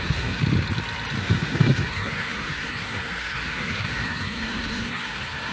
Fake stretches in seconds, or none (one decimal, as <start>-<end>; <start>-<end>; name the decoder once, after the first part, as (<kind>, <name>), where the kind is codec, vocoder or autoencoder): 0.0-0.4 (codec, SNAC); 1.2-5.5

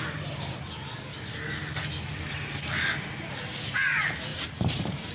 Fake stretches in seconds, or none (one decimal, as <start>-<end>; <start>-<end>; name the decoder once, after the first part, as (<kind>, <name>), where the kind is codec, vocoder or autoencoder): 4.3-5.1 (vocoder, BigVGAN v2)

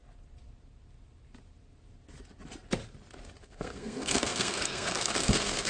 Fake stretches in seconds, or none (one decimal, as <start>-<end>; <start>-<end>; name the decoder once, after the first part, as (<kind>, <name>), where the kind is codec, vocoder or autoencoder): 3.4-5.7 (codec, SNAC)

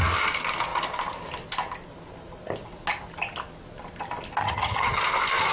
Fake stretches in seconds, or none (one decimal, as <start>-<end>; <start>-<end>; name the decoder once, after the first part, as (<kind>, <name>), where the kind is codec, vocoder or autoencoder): 4.4-5.0 (vocoder, HiFi-GAN)

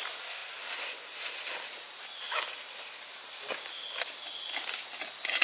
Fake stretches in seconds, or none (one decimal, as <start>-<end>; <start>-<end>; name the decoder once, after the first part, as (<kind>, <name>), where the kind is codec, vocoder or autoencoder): none